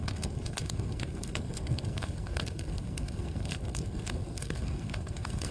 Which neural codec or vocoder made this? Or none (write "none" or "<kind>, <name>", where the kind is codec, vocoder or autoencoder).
codec, SNAC